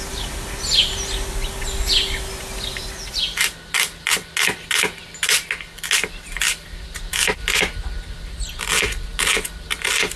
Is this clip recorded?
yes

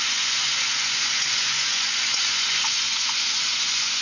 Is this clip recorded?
no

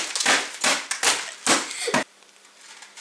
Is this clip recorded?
yes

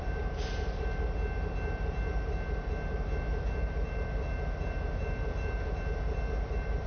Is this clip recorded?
yes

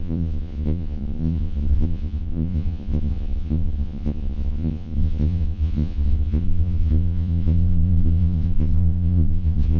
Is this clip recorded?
no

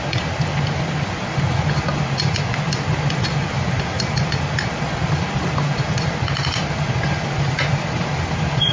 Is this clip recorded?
yes